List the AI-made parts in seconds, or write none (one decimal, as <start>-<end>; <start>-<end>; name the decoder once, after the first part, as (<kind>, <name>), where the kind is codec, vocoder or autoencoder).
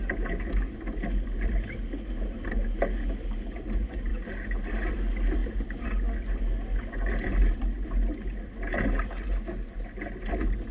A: none